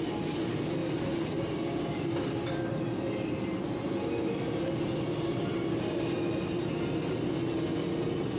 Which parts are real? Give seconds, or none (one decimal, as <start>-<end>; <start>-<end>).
0.0-8.4